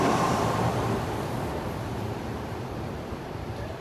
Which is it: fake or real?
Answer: fake